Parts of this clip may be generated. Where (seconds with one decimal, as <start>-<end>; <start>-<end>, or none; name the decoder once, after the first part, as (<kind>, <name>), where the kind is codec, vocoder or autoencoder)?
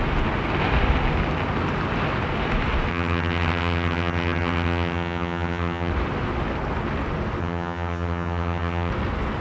2.9-5.9 (vocoder, HiFi-GAN); 7.4-8.9